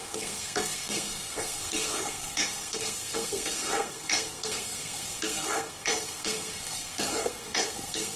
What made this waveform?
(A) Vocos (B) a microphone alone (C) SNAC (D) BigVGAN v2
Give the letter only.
C